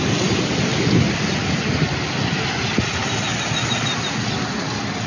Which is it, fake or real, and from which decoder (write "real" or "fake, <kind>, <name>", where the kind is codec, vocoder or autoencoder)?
real